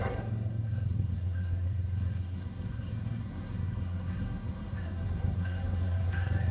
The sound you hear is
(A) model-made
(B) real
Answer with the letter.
A